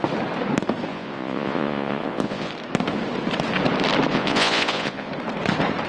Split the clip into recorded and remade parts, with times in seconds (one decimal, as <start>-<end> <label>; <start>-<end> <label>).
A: 0.0-0.9 recorded; 0.9-2.5 remade; 2.5-4.1 recorded; 4.1-5.1 remade; 5.1-5.9 recorded